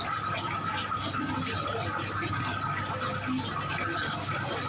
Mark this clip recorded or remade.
remade